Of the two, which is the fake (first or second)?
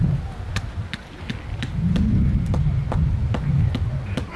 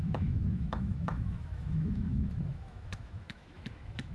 second